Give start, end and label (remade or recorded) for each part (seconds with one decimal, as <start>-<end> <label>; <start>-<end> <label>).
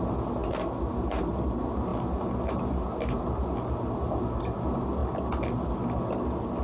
0.0-6.6 recorded